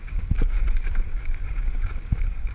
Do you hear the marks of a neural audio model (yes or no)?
yes